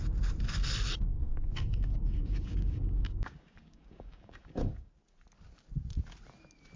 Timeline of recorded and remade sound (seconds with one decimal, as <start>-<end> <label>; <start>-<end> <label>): 0.0-1.1 recorded; 1.1-4.9 remade; 4.9-6.8 recorded

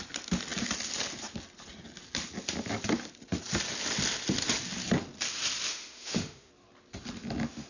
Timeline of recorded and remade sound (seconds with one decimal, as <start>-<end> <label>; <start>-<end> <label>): 0.0-5.7 recorded; 5.7-6.5 remade; 6.5-7.7 recorded

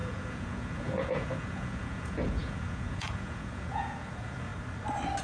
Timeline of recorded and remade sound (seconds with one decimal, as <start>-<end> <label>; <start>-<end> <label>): 0.0-4.5 remade; 4.5-5.2 recorded

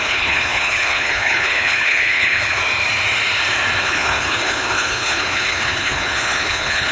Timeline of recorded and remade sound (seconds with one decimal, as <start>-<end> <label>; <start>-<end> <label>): 0.0-2.6 remade; 2.6-3.8 recorded; 3.8-6.9 remade